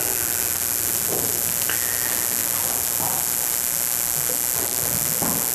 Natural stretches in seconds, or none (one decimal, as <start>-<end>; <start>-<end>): 0.0-5.5